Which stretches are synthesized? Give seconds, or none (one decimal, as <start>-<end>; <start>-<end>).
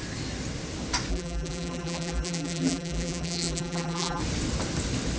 1.1-4.2